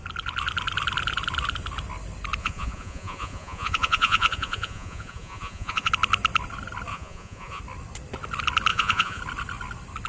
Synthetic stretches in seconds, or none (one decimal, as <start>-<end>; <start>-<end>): 2.4-5.9; 6.9-7.6; 8.7-9.2